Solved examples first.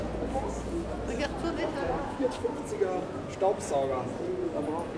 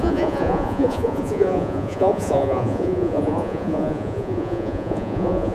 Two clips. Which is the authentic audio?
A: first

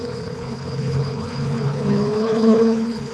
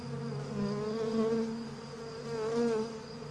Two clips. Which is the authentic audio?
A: second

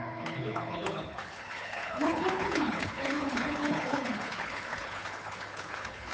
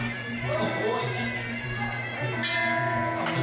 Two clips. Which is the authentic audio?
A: second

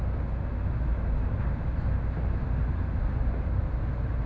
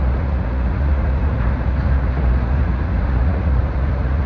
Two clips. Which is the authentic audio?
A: first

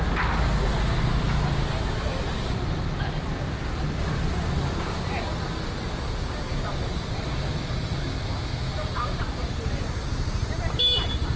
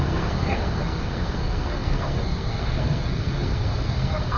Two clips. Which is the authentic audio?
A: first